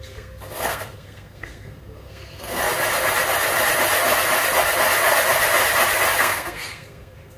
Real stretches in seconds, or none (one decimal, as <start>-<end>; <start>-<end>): 2.6-6.2